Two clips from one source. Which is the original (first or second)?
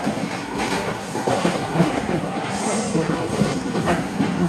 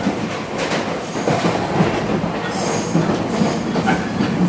second